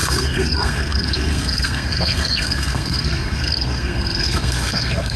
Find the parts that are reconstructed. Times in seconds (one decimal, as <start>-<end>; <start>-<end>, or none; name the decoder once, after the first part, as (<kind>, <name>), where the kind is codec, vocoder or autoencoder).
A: 0.0-5.2 (codec, SNAC)